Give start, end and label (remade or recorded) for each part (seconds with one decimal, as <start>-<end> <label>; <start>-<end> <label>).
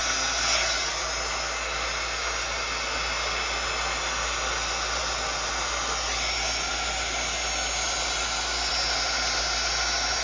0.0-10.2 recorded